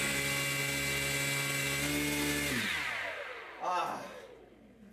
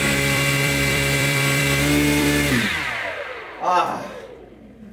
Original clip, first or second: first